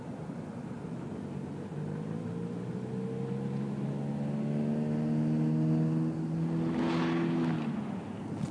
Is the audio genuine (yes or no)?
yes